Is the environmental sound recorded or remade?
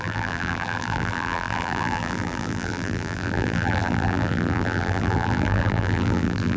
remade